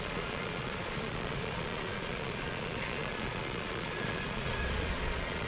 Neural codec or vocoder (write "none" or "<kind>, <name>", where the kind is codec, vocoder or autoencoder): vocoder, Vocos